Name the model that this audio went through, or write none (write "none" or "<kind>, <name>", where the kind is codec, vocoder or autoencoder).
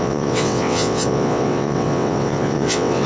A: vocoder, WaveNeXt